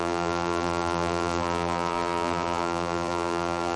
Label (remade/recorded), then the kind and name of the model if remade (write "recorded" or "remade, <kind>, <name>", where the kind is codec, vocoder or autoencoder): remade, vocoder, BigVGAN v2